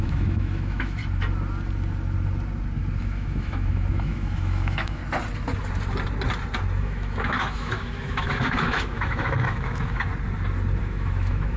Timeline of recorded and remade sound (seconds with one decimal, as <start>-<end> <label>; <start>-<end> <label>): 0.0-1.0 remade; 1.0-3.0 recorded; 3.0-5.0 remade; 5.0-6.8 recorded; 6.8-10.1 remade; 10.1-10.8 recorded; 10.8-11.6 remade